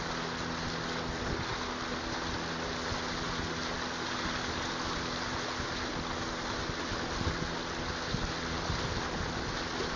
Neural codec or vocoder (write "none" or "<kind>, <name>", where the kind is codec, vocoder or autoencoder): none